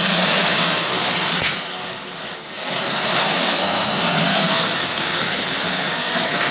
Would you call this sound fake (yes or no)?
yes